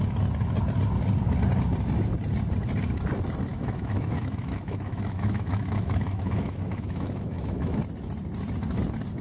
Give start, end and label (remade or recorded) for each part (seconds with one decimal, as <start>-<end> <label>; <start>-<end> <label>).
0.0-3.5 recorded; 3.5-7.8 remade; 7.8-9.2 recorded